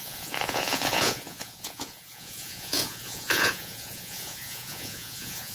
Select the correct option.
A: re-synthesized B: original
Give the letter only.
A